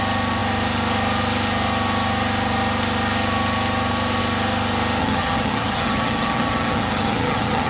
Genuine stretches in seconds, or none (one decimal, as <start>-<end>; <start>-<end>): 0.0-5.0

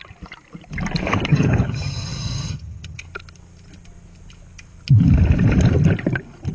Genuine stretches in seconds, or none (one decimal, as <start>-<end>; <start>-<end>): 0.0-1.3; 3.0-6.5

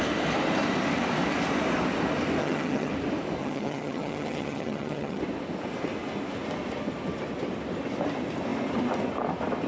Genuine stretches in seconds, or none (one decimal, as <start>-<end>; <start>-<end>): 0.0-2.4; 2.9-3.4; 5.2-9.7

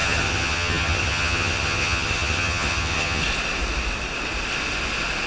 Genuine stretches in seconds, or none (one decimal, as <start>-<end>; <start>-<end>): 3.2-5.3

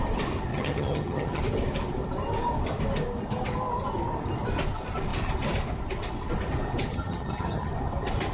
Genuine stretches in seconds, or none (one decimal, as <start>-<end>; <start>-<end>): 0.0-0.5; 1.4-6.9; 7.7-8.3

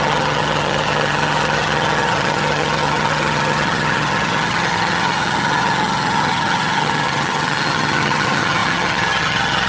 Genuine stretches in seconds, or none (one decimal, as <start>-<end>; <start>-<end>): none